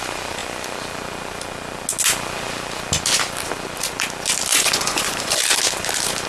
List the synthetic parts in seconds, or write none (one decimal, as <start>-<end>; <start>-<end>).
4.5-5.3